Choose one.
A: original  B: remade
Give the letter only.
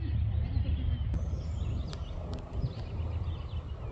A